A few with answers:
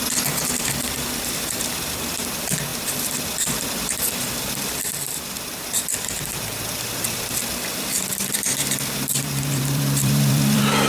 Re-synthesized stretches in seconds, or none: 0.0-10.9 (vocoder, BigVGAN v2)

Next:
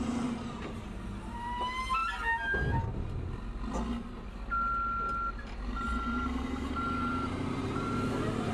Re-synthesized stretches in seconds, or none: 0.0-2.0 (vocoder, BigVGAN v2); 5.4-8.5

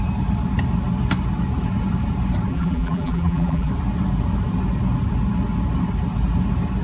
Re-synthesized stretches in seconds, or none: 2.5-3.7 (vocoder, BigVGAN v2)

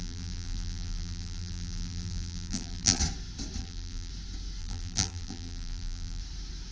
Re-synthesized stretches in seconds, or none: 0.0-3.0 (vocoder, BigVGAN v2); 3.6-4.1; 4.6-6.2

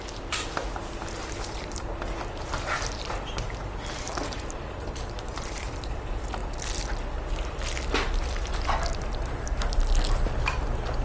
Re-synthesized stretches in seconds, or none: 1.2-6.0 (vocoder, BigVGAN v2)

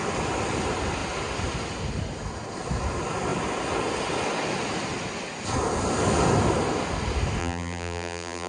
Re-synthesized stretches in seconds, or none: 7.4-8.5 (vocoder, BigVGAN v2)

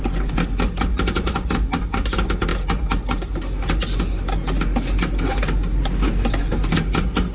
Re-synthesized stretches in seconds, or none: none